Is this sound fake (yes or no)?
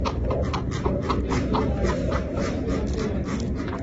no